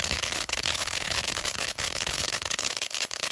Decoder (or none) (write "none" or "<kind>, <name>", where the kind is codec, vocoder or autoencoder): codec, HILCodec